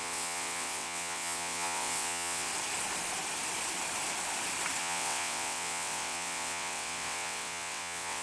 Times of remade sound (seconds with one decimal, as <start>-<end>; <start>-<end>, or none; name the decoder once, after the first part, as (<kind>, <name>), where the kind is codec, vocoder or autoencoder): 0.0-2.5 (vocoder, WaveNeXt); 4.8-8.2